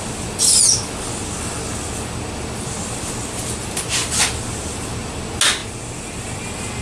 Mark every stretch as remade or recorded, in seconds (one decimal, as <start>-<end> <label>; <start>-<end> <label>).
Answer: 0.0-6.8 recorded